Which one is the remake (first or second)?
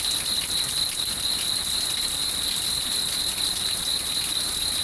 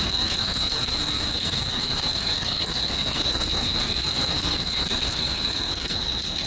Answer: second